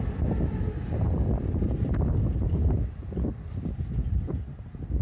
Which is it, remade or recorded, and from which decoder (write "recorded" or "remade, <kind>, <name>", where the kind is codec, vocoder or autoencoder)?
recorded